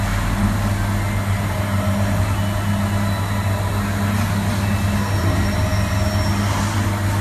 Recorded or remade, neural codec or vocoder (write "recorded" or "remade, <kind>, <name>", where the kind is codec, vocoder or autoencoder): recorded